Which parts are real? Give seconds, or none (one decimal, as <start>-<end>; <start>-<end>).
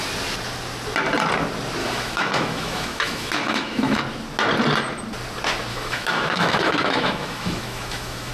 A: 0.0-1.8; 4.0-5.7